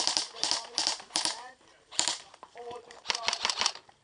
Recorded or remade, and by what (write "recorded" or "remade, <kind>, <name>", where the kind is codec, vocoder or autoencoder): remade, vocoder, BigVGAN v2